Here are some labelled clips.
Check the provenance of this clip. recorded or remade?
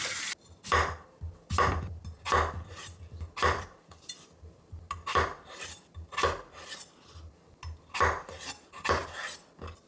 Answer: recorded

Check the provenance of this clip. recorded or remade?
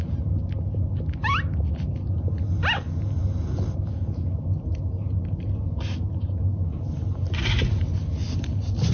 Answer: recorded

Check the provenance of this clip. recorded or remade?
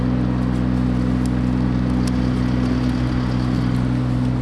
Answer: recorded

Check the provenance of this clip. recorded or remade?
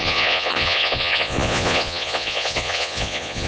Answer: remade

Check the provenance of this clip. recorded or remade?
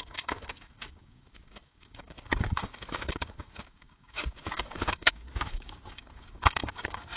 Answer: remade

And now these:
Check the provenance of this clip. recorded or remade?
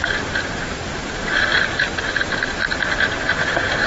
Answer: remade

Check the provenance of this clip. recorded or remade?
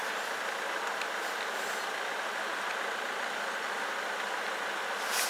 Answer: recorded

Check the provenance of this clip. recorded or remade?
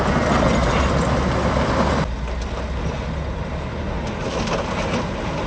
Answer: recorded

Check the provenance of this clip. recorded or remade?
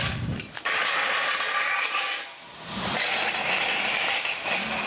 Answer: recorded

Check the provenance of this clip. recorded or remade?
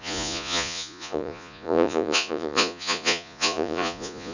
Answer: remade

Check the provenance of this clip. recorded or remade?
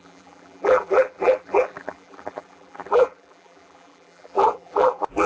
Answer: remade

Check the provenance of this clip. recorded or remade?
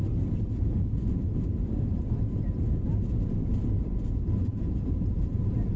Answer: remade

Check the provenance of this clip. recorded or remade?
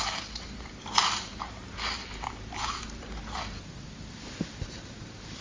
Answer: remade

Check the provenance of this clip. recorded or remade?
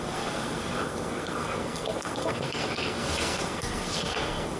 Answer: remade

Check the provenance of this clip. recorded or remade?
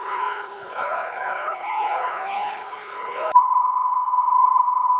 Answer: remade